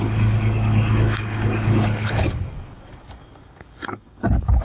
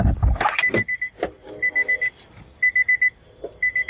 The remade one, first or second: first